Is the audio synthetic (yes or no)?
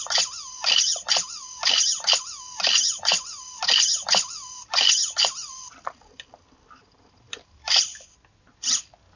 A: no